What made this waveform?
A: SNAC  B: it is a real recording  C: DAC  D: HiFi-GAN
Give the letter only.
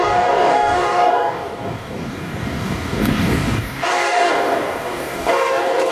C